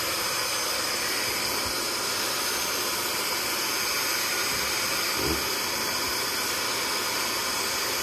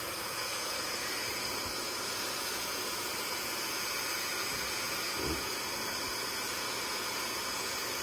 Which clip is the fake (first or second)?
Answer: second